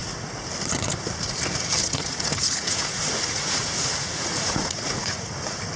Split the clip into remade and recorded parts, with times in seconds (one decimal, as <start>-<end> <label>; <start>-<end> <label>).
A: 0.0-1.8 recorded; 1.8-5.3 remade; 5.3-5.8 recorded